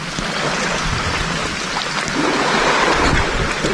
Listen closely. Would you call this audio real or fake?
real